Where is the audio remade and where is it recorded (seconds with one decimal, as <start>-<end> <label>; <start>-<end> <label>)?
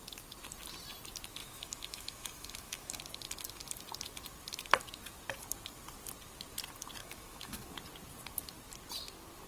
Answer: 0.0-1.4 recorded; 1.4-3.0 remade; 3.0-7.0 recorded; 7.0-7.6 remade; 7.6-9.5 recorded